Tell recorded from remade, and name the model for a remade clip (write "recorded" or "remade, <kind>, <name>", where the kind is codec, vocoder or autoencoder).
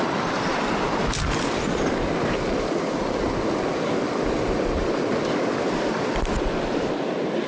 recorded